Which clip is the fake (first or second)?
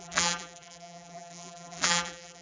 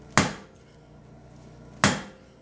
first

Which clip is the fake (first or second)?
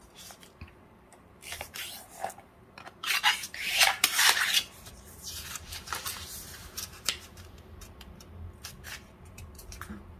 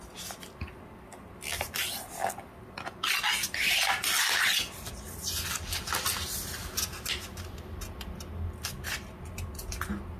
first